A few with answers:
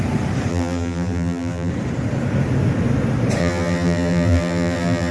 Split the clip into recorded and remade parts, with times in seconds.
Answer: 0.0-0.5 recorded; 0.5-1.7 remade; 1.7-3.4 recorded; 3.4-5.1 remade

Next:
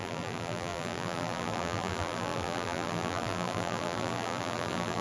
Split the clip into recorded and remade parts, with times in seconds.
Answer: 0.0-5.0 remade

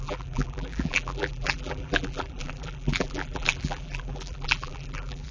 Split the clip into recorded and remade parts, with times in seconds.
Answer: 0.0-5.3 remade

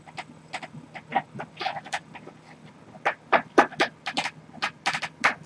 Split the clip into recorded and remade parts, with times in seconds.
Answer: 0.0-5.5 recorded

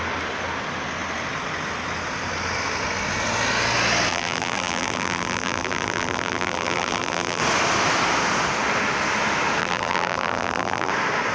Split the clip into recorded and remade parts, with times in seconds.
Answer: 0.0-4.1 recorded; 4.1-7.4 remade; 7.4-9.6 recorded; 9.6-10.9 remade; 10.9-11.3 recorded

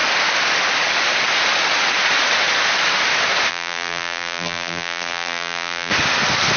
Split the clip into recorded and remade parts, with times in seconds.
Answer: 0.0-3.5 recorded; 3.5-5.9 remade; 5.9-6.6 recorded

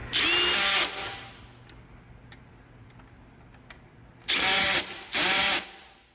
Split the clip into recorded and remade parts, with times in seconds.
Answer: 0.0-4.5 recorded; 4.5-5.6 remade; 5.6-6.1 recorded